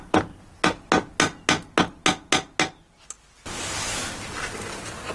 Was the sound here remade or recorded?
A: recorded